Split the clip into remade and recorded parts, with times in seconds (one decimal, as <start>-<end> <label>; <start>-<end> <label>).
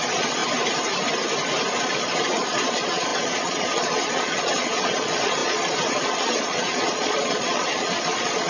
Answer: 0.0-0.4 remade; 0.4-1.8 recorded; 1.8-8.5 remade